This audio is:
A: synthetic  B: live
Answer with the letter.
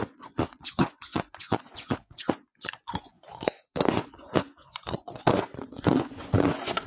A